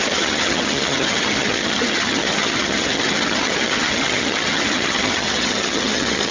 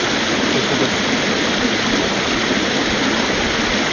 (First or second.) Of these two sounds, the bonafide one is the second